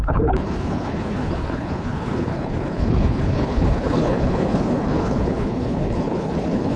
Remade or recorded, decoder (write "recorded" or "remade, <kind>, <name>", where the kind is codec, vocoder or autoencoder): remade, codec, HILCodec